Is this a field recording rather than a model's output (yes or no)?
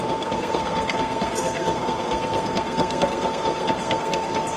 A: no